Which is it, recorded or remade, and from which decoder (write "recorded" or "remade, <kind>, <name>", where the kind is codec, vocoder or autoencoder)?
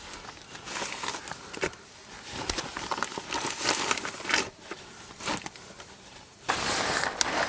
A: recorded